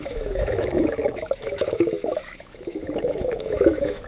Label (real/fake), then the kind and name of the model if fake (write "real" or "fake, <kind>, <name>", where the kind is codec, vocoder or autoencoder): fake, autoencoder, DAC-VAE